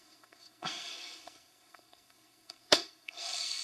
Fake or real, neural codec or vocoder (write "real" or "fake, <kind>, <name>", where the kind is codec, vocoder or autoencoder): fake, codec, SNAC